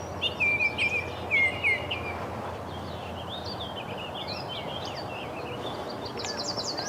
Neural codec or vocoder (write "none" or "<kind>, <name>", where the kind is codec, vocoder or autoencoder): none